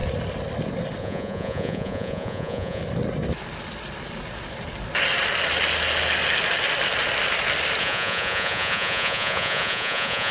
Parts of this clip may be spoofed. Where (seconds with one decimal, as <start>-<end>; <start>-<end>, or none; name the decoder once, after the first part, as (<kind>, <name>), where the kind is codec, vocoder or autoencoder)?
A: 1.0-2.8 (vocoder, Vocos); 7.8-10.3